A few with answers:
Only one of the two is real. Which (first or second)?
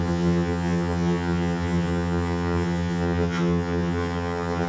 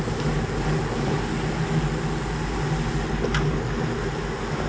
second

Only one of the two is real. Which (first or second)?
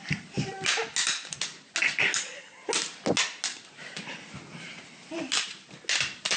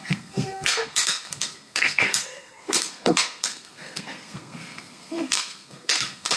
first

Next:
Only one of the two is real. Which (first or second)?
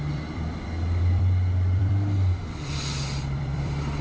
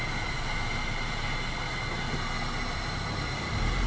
second